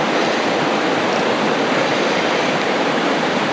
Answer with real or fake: real